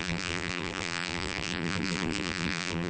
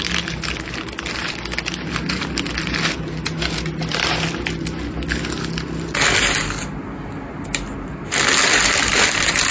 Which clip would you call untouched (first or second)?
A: second